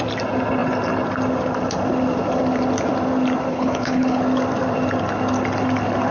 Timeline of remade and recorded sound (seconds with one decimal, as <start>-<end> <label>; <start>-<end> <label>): 0.0-3.5 recorded; 3.5-4.2 remade; 4.2-6.1 recorded